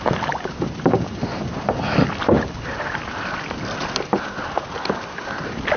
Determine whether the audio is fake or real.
real